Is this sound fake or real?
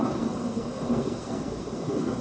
fake